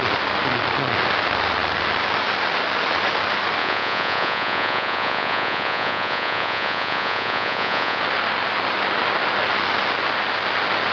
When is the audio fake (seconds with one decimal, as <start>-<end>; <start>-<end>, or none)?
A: 3.6-8.0